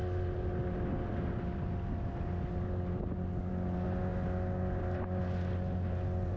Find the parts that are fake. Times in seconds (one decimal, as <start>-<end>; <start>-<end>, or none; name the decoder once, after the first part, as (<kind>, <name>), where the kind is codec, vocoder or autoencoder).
none